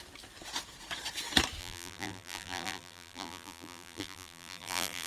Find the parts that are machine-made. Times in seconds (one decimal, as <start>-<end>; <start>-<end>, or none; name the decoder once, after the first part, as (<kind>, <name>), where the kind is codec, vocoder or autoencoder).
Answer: 1.6-5.1 (vocoder, BigVGAN v2)